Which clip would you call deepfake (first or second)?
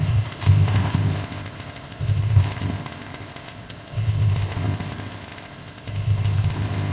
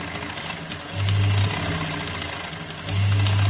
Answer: first